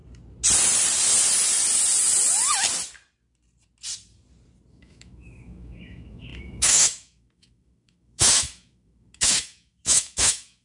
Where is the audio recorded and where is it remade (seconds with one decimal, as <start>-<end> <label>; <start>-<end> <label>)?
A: 0.0-4.7 recorded; 4.7-10.6 remade